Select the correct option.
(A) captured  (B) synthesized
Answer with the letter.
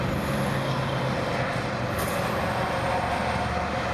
A